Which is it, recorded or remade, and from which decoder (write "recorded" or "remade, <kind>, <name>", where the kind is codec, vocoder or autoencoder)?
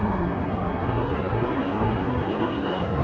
remade, codec, SNAC